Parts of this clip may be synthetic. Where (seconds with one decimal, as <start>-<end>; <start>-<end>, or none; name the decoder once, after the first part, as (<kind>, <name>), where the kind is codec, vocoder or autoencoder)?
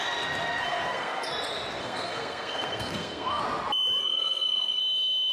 0.6-1.3 (codec, SNAC); 1.8-3.4; 4.0-4.8